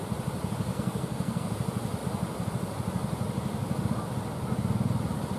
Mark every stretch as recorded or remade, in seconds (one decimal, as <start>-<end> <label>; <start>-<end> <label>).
0.0-0.7 recorded; 0.7-1.5 remade; 1.5-5.4 recorded